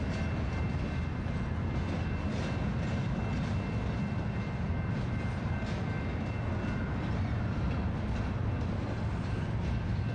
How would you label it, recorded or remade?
recorded